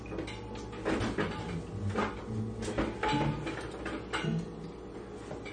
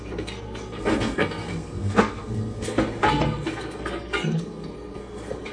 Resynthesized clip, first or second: second